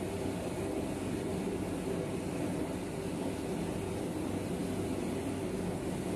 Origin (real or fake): real